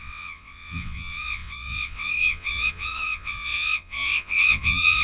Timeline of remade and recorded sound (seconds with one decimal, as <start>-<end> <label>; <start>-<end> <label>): 0.0-5.0 remade